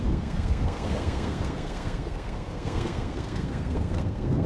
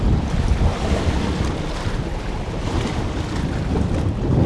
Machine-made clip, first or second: first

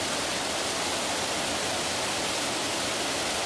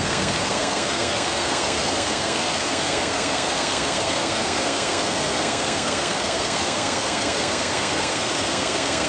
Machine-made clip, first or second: second